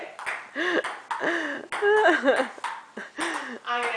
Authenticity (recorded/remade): recorded